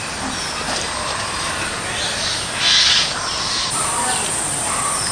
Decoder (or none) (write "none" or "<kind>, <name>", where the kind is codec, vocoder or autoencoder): none